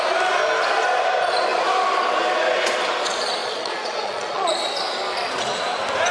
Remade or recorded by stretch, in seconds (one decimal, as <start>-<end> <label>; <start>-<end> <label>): 0.0-3.4 recorded; 3.4-4.7 remade; 4.7-6.1 recorded